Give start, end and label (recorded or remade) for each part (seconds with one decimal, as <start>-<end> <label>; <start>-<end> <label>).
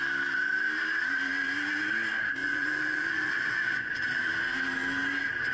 0.0-2.4 recorded; 2.4-3.9 remade; 3.9-5.5 recorded